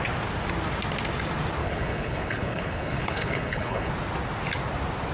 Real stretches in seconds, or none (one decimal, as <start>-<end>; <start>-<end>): 0.0-1.6; 3.9-5.1